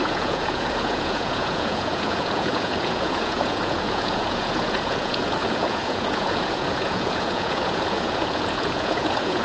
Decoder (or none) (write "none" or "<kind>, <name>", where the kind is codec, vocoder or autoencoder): vocoder, Vocos